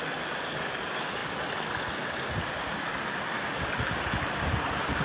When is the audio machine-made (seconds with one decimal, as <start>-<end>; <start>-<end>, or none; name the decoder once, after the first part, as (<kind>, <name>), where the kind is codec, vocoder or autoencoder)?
none